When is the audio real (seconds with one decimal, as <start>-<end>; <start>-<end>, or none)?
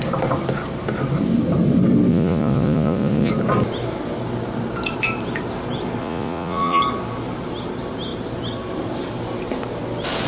0.0-2.1; 3.3-6.0; 6.8-10.3